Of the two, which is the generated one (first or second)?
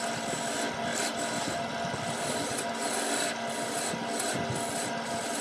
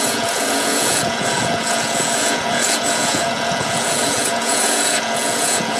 second